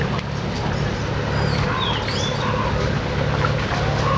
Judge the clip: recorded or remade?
remade